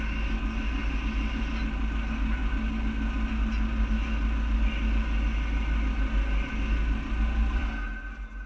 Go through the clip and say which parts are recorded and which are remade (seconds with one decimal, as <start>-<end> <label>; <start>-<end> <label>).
0.0-8.5 recorded